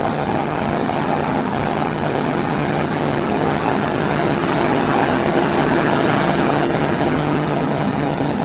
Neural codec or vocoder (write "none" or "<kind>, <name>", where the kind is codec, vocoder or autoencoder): vocoder, HiFi-GAN